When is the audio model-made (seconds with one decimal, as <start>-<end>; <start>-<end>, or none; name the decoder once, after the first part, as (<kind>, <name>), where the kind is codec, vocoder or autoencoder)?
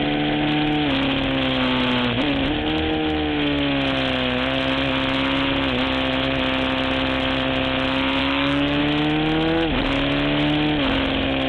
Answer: 8.2-8.8 (codec, DAC)